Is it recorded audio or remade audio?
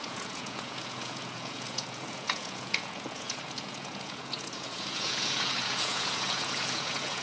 remade